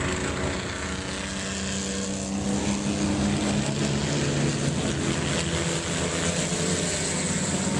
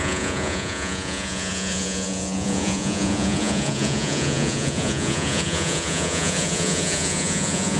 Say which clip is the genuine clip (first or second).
first